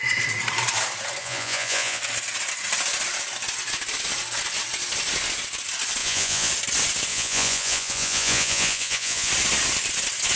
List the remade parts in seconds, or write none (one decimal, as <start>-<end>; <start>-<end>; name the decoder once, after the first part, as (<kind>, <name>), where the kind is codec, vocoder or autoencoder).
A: 1.2-2.0 (vocoder, Vocos); 6.0-6.5; 7.1-9.3